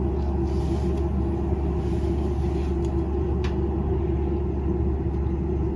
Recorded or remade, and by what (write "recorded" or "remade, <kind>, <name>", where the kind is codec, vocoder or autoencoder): recorded